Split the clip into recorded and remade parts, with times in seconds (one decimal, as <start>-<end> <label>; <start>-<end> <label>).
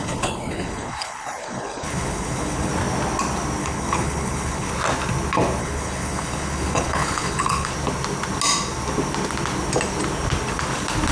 0.0-2.7 remade; 2.7-3.6 recorded; 3.6-4.7 remade; 4.7-5.6 recorded; 5.6-7.7 remade; 7.7-11.1 recorded